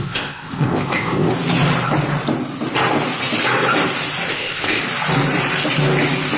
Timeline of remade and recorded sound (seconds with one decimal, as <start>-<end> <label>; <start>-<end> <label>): 0.0-1.3 remade; 1.3-4.3 recorded; 4.3-4.8 remade; 4.8-6.4 recorded